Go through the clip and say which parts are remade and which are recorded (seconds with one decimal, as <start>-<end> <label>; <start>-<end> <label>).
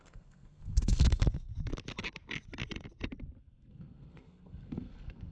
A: 0.0-1.5 remade; 1.5-3.4 recorded; 3.4-5.3 remade